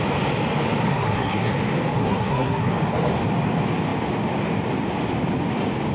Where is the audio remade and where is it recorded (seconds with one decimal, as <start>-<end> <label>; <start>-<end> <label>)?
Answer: 0.0-0.9 recorded; 0.9-1.5 remade; 1.5-2.0 recorded; 2.0-2.7 remade; 2.7-5.9 recorded